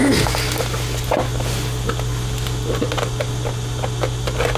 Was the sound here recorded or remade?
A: recorded